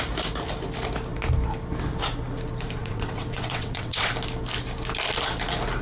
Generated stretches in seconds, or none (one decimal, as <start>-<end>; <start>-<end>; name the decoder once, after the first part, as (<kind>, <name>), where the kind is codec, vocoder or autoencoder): 2.8-4.1 (vocoder, WaveNeXt)